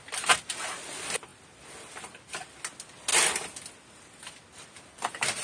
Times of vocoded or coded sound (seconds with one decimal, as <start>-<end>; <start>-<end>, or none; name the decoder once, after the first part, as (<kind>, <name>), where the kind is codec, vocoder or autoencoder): none